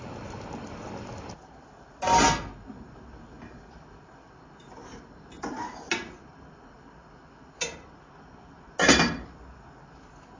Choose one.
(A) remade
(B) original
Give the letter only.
B